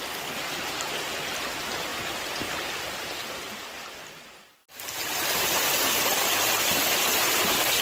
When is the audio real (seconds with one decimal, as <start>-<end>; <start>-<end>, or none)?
1.9-2.5; 4.6-5.5; 6.1-6.7